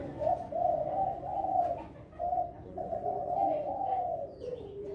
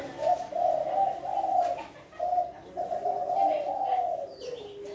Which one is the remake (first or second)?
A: first